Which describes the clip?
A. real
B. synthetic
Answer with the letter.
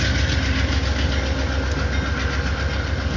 A